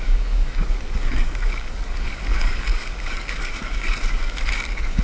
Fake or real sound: fake